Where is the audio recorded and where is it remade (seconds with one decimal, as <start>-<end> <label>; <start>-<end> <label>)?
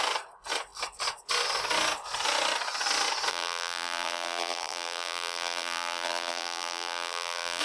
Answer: 0.0-3.3 recorded; 3.3-7.6 remade